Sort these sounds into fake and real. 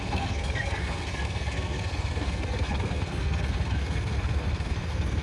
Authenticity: fake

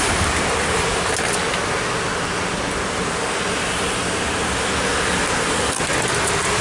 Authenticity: real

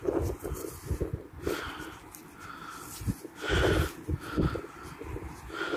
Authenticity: real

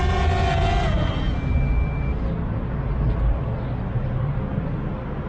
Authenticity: real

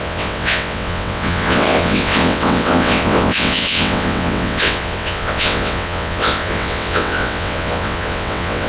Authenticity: fake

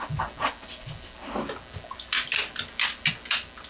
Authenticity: real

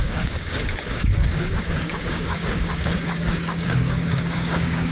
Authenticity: fake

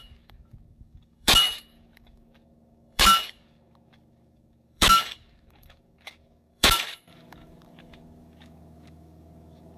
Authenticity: fake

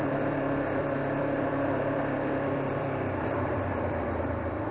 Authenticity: fake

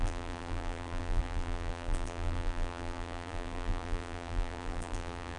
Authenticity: fake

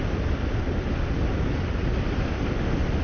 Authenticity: real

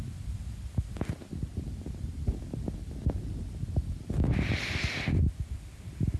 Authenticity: fake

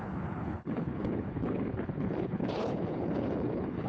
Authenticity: fake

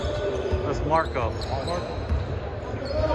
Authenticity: real